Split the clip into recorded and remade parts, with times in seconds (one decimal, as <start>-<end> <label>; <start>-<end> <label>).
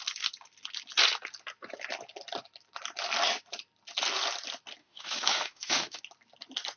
0.0-4.8 recorded; 4.8-6.0 remade; 6.0-6.8 recorded